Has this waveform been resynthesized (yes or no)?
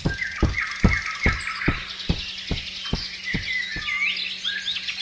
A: no